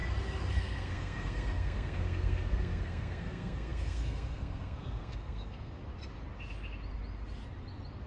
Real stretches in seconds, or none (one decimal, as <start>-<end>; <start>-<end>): 0.0-0.5; 5.8-8.1